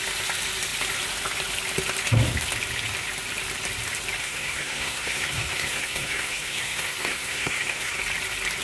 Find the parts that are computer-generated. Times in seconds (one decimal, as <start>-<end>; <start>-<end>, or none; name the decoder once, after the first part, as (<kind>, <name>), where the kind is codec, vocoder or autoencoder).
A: 4.2-8.0 (codec, SNAC)